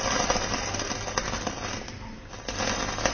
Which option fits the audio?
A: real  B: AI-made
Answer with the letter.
A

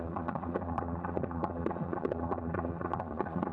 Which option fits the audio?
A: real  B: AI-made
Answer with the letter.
B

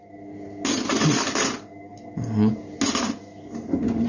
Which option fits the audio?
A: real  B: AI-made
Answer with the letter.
A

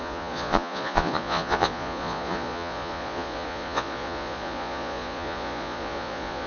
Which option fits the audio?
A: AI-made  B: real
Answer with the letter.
A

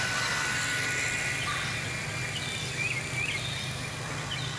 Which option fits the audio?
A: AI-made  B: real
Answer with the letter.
B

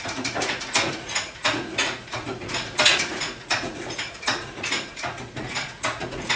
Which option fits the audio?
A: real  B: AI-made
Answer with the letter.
B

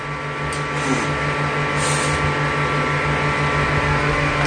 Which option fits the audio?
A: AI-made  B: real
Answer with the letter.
B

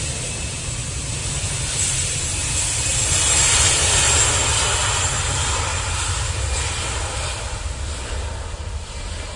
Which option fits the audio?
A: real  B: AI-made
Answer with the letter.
A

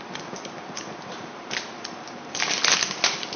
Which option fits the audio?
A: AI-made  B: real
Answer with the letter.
B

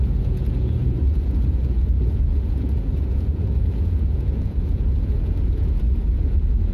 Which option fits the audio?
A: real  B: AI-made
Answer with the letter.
B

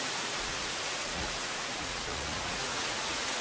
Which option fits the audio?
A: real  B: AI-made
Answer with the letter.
B